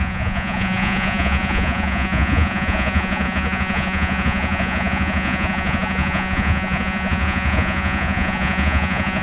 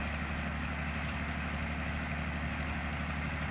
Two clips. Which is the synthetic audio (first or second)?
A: first